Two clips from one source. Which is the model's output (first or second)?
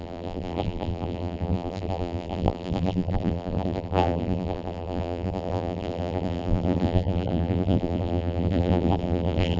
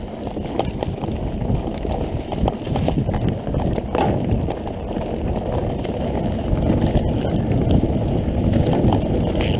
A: first